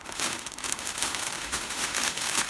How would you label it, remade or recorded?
remade